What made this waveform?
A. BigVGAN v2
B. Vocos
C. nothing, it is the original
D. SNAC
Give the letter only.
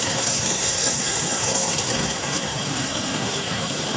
D